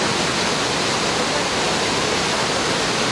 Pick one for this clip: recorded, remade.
recorded